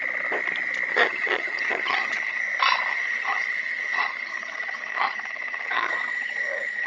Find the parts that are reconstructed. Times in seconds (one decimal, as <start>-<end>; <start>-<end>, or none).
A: 0.9-2.4; 2.9-6.9